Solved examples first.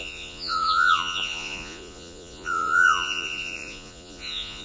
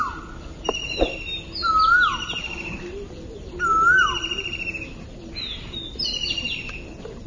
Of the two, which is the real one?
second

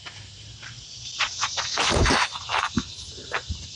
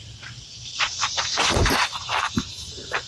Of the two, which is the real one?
first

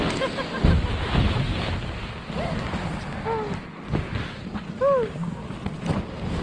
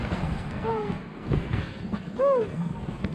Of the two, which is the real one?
first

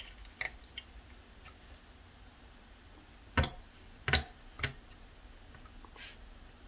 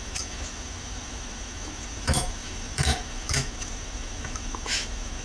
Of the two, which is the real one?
first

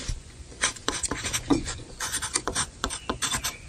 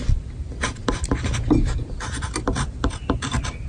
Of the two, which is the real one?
second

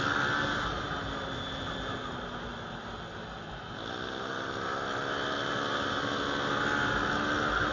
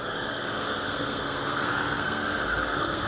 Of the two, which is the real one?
first